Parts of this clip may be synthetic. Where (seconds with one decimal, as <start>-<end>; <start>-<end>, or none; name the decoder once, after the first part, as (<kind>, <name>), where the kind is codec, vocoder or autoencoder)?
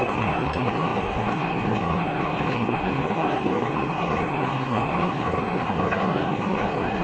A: 0.0-7.0 (codec, SNAC)